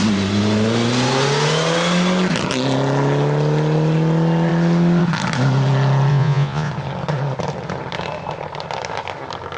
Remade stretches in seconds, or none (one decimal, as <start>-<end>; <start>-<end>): 6.1-6.7

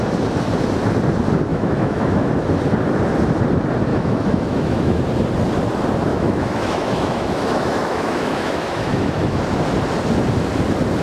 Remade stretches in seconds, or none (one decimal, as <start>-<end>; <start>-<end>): 1.5-2.3; 3.9-5.0; 6.1-9.4

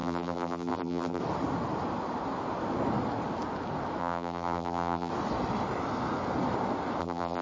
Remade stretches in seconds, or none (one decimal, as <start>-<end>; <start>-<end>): 0.0-1.2; 4.0-5.1; 7.0-7.4

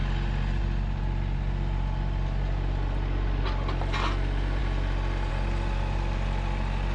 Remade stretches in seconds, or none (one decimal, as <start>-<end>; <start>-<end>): none